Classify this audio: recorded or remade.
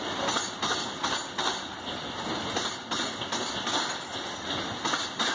recorded